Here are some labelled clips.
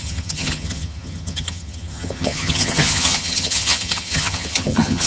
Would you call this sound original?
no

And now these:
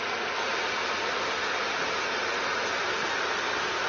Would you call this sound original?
yes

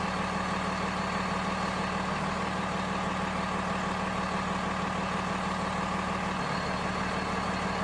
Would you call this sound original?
yes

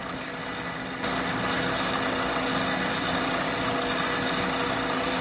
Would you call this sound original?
yes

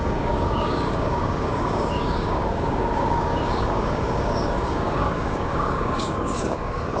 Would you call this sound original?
no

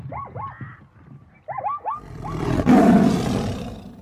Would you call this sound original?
yes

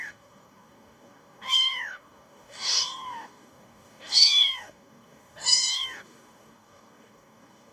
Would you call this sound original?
no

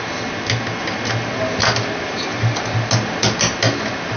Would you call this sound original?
yes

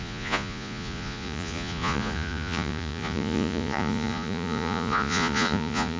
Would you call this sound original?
no